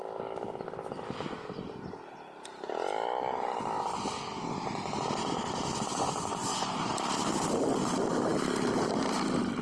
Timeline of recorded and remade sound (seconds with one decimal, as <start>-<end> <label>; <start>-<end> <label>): 0.0-5.9 recorded; 5.9-6.9 remade; 6.9-9.6 recorded